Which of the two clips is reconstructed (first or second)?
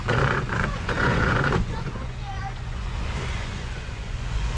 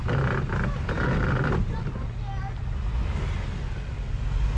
first